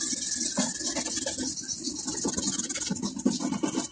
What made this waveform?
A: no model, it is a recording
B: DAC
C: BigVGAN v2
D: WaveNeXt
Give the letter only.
A